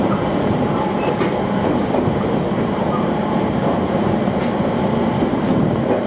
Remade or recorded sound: remade